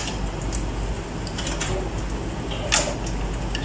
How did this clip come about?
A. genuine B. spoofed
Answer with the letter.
A